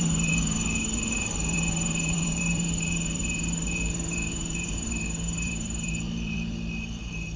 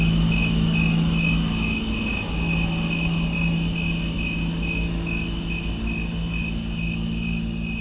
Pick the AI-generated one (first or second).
first